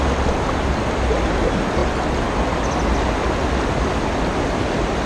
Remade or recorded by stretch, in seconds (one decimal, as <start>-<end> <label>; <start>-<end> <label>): 0.0-5.1 recorded